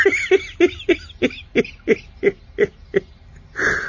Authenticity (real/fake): real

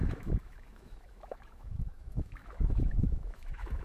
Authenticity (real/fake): fake